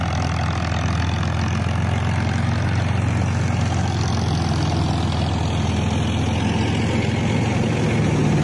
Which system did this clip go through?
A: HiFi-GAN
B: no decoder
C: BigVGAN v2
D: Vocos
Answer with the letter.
B